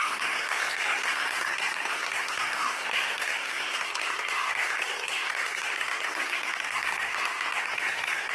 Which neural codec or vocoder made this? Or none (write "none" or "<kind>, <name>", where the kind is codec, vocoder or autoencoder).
codec, SNAC